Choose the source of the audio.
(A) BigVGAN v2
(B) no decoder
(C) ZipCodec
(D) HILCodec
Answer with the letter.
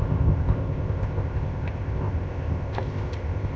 C